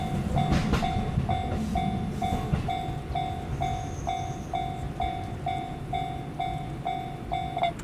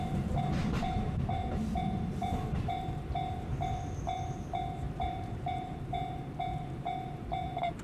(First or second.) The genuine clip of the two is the first